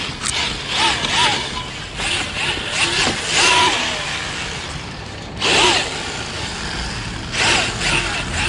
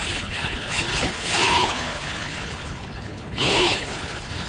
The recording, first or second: first